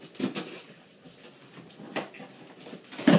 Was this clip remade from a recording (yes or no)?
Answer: no